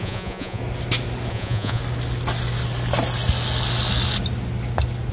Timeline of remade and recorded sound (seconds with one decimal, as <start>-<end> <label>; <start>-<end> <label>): 0.0-0.6 remade; 0.6-1.3 recorded; 1.3-1.8 remade; 1.8-5.1 recorded